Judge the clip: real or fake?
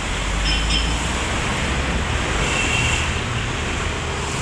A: real